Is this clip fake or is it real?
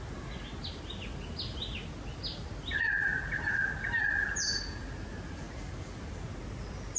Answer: real